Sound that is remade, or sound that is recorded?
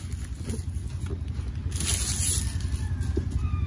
recorded